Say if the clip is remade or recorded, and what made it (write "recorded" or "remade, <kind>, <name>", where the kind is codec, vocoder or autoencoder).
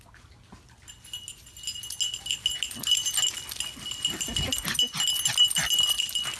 recorded